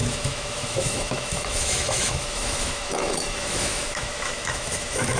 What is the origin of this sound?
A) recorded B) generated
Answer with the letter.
B